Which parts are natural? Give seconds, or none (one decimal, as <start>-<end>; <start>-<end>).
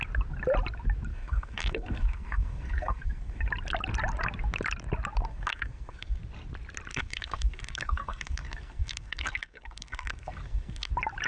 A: 0.0-1.1; 3.4-5.3; 6.2-6.9; 10.9-11.3